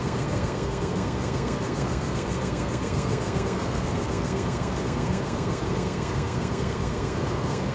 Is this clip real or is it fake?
fake